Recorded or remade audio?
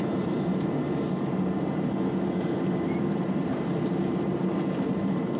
remade